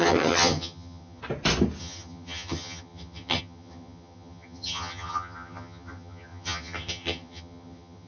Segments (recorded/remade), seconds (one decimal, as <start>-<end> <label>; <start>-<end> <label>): 0.0-1.2 remade; 1.2-1.8 recorded; 1.8-8.1 remade